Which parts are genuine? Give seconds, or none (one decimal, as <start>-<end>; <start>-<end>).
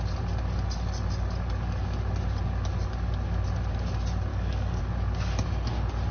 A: 0.0-4.3; 4.8-6.1